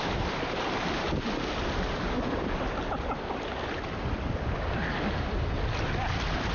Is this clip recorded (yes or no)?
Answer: yes